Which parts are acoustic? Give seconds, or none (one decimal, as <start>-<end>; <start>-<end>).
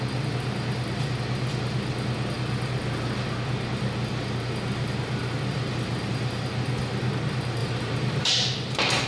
0.0-5.5; 6.4-7.6; 8.3-9.1